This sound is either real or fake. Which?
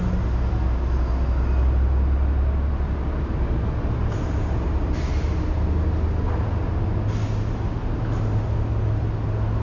real